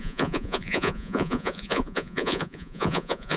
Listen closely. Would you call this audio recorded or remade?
remade